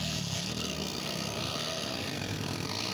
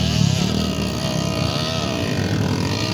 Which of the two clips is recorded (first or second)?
second